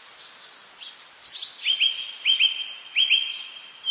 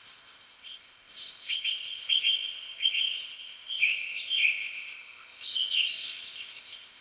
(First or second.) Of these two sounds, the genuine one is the first